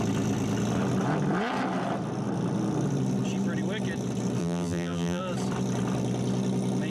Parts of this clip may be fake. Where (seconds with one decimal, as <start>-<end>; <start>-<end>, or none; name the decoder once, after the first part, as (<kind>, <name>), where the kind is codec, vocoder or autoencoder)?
4.4-5.2 (vocoder, BigVGAN v2)